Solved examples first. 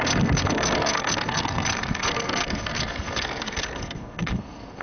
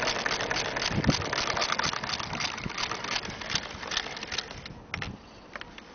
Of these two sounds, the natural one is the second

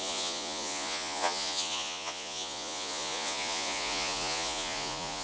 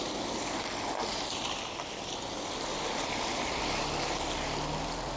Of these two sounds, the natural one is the second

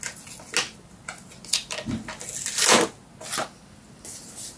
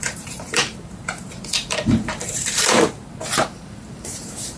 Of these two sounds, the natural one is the first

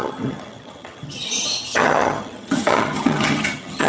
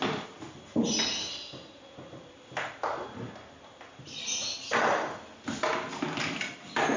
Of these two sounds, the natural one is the second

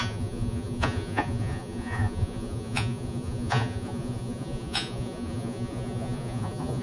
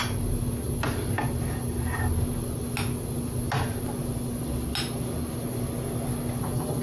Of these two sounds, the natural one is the second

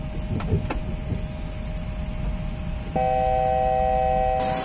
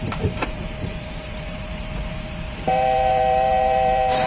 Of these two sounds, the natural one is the first